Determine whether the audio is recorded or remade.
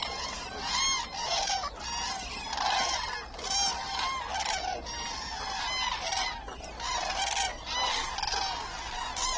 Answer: recorded